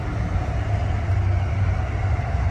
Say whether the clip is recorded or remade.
recorded